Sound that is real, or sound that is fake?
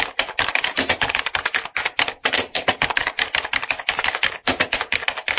real